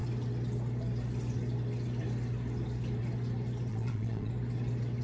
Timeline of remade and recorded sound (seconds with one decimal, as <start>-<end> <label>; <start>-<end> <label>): 0.0-3.7 recorded; 3.7-4.3 remade; 4.3-5.0 recorded